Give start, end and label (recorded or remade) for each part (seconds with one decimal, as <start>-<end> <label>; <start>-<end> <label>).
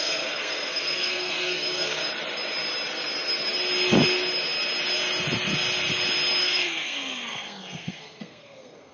0.0-2.0 remade; 2.0-6.4 recorded; 6.4-8.9 remade